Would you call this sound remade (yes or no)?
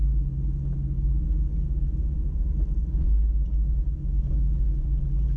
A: no